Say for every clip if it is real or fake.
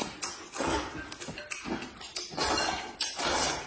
real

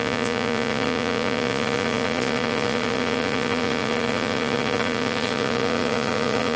fake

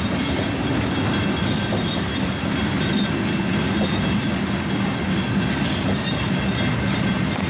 real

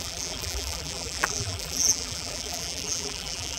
fake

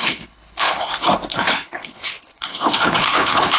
fake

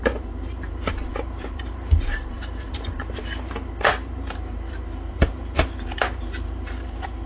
fake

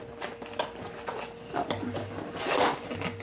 real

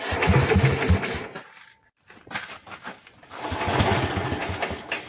real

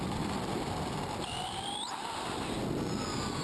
real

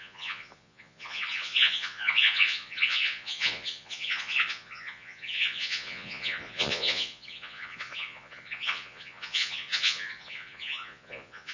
fake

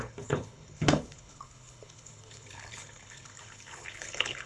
fake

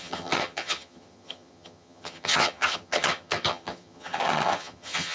fake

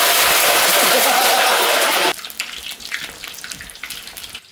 real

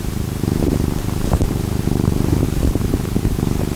fake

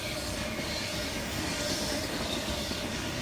fake